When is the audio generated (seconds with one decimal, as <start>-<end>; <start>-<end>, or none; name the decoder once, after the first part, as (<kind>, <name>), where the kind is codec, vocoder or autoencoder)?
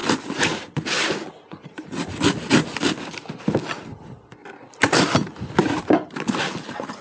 none